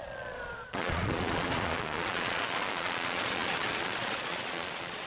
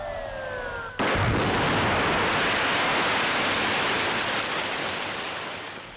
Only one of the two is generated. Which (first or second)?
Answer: first